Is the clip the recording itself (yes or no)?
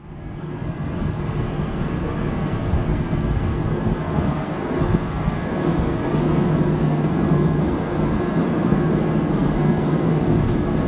no